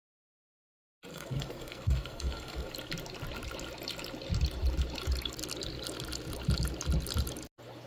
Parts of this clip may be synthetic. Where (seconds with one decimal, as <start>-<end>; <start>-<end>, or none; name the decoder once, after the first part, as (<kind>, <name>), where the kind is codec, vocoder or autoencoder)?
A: 1.1-2.7 (codec, SNAC)

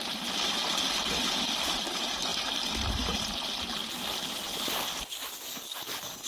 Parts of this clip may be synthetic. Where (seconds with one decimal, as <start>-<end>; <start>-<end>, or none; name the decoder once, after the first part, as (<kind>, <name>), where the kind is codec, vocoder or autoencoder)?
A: 5.5-6.3 (codec, DAC)

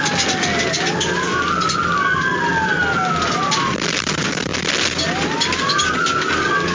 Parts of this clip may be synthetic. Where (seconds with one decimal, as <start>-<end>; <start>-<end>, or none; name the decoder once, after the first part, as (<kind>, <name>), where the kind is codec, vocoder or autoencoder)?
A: none

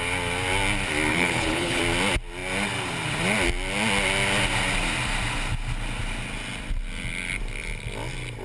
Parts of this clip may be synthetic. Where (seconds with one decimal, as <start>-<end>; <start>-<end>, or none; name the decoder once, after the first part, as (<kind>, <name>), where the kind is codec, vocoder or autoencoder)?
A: 1.1-1.8 (codec, HILCodec)

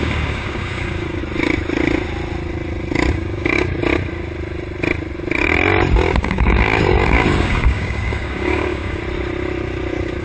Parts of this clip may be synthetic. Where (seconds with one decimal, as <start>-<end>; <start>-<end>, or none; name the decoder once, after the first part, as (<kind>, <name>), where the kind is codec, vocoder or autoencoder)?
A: 0.0-1.2 (codec, DAC); 3.1-3.8; 6.2-9.0

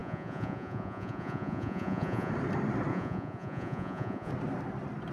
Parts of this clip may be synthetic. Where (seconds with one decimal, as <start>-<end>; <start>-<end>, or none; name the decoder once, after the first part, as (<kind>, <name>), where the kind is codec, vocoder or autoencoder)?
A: 0.0-2.3 (vocoder, Vocos); 2.9-4.3